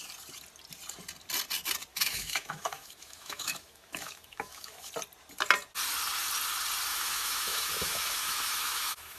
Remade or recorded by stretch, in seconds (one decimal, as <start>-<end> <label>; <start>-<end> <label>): 0.0-1.9 recorded; 1.9-4.9 remade; 4.9-6.9 recorded; 6.9-9.2 remade